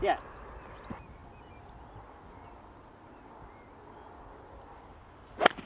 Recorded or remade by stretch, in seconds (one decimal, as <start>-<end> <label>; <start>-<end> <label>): 0.0-5.7 recorded